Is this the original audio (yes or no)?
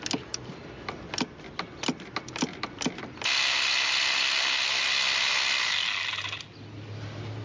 yes